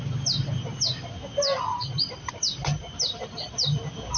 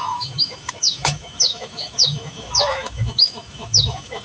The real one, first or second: first